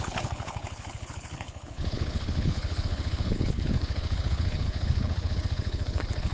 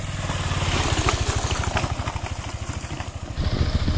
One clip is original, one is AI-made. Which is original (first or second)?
second